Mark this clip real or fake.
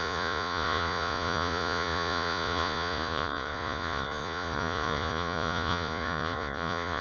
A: fake